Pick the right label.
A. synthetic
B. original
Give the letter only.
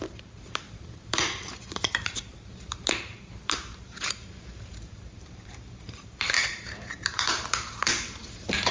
A